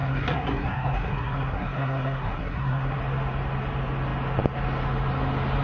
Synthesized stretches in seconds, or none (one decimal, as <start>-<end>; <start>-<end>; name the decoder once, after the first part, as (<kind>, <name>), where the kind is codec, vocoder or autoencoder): 0.0-3.0 (codec, SNAC)